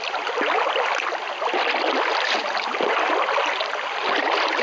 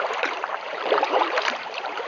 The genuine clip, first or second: first